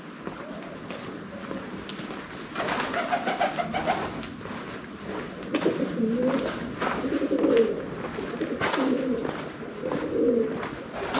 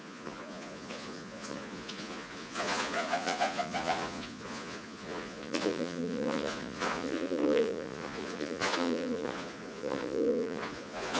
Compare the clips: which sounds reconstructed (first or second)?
second